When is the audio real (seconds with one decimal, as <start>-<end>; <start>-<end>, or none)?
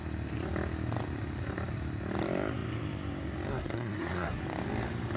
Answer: 0.0-3.5; 4.4-5.2